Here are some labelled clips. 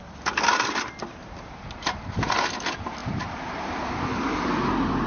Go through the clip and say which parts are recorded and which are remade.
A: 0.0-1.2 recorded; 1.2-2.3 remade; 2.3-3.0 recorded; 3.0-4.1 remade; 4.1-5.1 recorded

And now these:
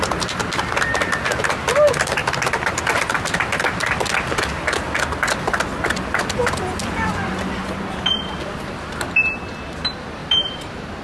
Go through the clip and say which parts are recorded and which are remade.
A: 0.0-2.2 recorded; 2.2-2.8 remade; 2.8-10.2 recorded; 10.2-11.0 remade

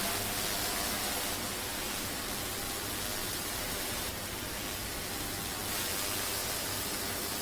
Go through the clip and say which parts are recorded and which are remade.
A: 0.0-3.2 recorded; 3.2-4.1 remade; 4.1-7.4 recorded

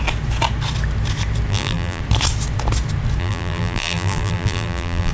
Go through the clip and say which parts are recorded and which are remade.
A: 0.0-1.5 recorded; 1.5-2.0 remade; 2.0-3.2 recorded; 3.2-5.1 remade